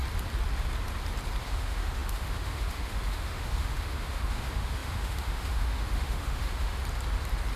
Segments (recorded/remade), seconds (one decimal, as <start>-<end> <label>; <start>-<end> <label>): 0.0-1.4 recorded; 1.4-6.8 remade; 6.8-7.6 recorded

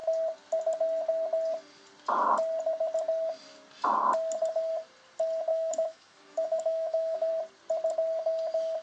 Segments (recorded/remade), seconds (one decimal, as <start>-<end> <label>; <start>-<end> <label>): 0.0-5.5 recorded; 5.5-7.3 remade; 7.3-8.8 recorded

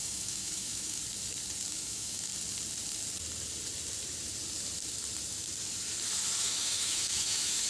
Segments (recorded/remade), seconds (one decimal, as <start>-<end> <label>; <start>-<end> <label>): 0.0-1.0 remade; 1.0-1.7 recorded; 1.7-2.3 remade; 2.3-6.4 recorded; 6.4-7.7 remade

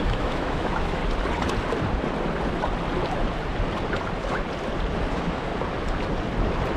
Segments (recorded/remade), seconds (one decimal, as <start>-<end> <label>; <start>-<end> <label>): 0.0-1.0 remade; 1.0-5.1 recorded; 5.1-5.5 remade; 5.5-6.8 recorded

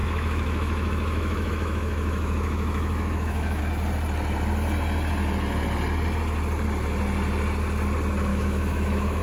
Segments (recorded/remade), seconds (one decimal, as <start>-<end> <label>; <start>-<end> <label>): 0.0-3.6 remade; 3.6-8.3 recorded; 8.3-9.2 remade